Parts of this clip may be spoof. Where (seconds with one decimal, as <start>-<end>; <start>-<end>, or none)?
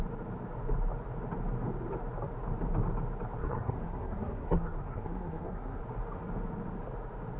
3.4-5.8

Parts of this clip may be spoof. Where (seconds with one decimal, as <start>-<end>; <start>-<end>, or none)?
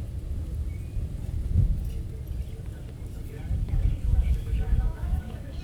3.6-5.6